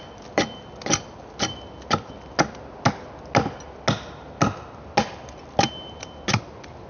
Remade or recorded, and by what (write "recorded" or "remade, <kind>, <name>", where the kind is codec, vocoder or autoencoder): recorded